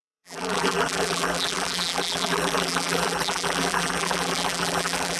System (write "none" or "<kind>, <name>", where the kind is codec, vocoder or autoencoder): vocoder, BigVGAN v2